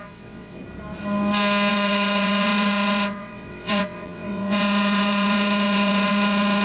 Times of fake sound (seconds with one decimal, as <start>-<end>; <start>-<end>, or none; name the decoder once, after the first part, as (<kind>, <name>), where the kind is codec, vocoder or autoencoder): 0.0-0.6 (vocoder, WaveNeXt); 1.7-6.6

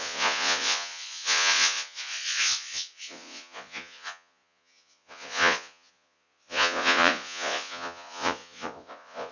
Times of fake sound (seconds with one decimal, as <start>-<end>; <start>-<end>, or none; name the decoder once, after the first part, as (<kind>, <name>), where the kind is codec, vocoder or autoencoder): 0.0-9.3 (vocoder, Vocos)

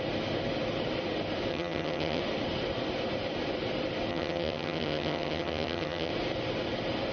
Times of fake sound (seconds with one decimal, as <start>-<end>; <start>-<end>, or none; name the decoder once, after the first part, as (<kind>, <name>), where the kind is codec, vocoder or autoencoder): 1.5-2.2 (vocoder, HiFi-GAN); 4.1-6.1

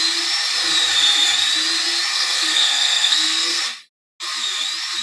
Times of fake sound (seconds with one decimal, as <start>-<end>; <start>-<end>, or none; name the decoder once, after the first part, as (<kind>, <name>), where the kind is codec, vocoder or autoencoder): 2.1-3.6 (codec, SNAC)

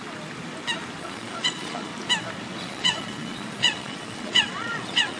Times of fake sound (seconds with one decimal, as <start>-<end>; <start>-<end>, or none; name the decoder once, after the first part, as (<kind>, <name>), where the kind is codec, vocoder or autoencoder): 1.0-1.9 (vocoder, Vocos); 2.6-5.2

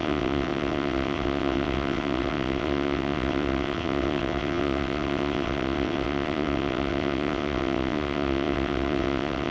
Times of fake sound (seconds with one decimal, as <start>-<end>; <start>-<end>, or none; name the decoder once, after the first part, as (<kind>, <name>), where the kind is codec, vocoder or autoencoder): 0.0-9.5 (vocoder, WaveNeXt)

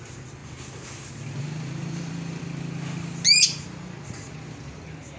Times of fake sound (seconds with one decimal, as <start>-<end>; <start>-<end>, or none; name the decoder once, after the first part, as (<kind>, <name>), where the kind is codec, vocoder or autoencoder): 1.8-2.4 (vocoder, BigVGAN v2)

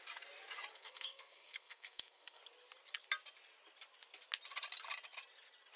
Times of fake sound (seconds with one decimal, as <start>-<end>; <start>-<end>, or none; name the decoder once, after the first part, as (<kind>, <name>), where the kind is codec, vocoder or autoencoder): 0.7-2.4 (codec, SNAC)